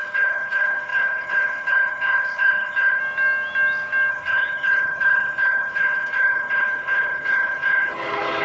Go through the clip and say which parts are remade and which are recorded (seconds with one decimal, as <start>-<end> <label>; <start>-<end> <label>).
0.0-3.0 remade; 3.0-4.1 recorded; 4.1-8.4 remade